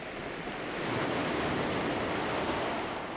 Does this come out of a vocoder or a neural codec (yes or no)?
no